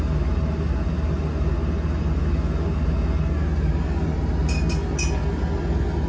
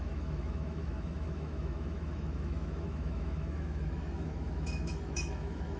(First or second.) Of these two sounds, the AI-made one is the second